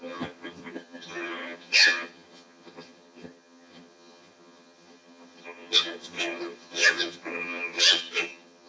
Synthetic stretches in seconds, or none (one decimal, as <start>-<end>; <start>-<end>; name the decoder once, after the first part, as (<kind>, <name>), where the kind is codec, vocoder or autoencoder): 0.0-8.7 (vocoder, HiFi-GAN)